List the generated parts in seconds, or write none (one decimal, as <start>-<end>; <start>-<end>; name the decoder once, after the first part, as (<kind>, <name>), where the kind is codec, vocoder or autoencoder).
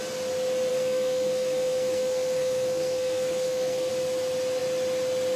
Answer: 0.7-3.9 (codec, SNAC)